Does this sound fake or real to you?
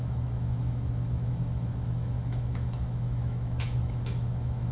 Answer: fake